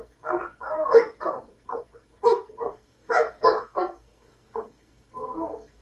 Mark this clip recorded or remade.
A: remade